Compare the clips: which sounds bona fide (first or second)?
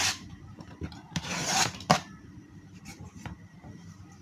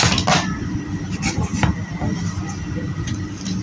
second